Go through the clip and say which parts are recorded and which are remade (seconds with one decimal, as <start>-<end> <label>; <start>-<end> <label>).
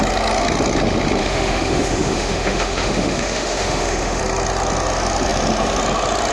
0.0-1.2 recorded; 1.2-4.2 remade; 4.2-6.3 recorded